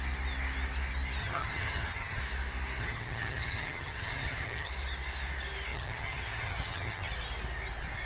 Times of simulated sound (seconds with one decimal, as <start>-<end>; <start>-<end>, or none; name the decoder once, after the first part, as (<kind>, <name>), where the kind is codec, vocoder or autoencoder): 1.2-2.2 (vocoder, HiFi-GAN); 2.8-4.7; 5.7-7.1